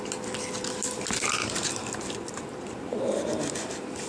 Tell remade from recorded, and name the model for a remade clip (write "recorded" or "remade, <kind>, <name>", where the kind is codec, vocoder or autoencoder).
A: recorded